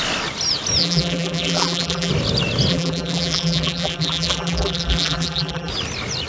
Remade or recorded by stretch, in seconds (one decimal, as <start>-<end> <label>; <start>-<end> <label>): 0.0-0.8 recorded; 0.8-2.1 remade; 2.1-2.7 recorded; 2.7-5.7 remade; 5.7-6.3 recorded